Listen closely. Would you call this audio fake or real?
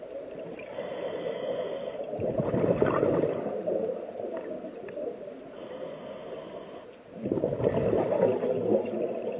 real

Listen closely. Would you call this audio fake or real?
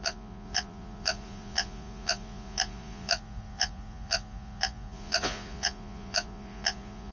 fake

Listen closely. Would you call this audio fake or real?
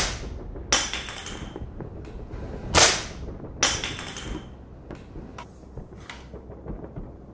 real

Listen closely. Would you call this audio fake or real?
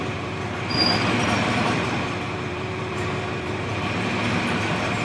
fake